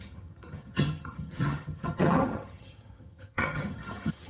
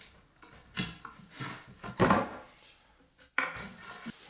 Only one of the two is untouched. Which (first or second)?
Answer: second